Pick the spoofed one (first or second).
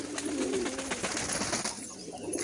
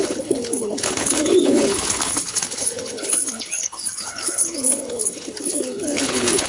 second